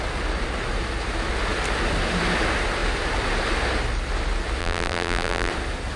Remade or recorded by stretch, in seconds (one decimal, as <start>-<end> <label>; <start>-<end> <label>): 0.0-4.6 recorded; 4.6-5.5 remade; 5.5-6.0 recorded